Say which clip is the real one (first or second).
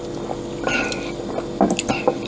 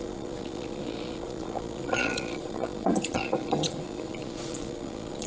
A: first